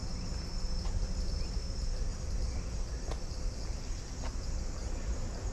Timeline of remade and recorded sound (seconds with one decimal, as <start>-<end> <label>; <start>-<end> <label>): 0.0-2.1 recorded; 2.1-2.6 remade; 2.6-5.5 recorded